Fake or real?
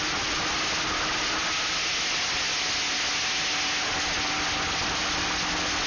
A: real